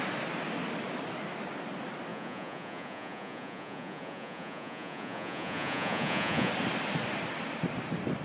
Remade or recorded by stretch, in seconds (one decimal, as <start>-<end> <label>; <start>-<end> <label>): 0.0-2.1 recorded; 2.1-6.5 remade; 6.5-8.2 recorded